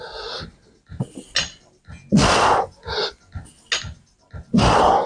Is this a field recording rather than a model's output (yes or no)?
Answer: yes